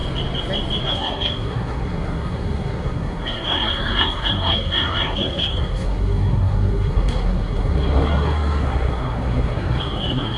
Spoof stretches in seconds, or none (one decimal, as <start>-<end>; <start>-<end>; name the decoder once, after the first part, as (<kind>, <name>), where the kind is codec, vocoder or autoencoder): 0.8-10.4 (codec, SNAC)